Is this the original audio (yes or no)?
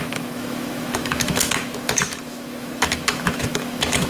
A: no